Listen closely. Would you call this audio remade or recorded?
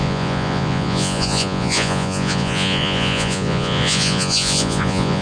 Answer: remade